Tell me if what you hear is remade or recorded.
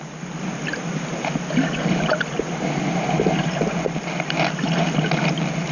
recorded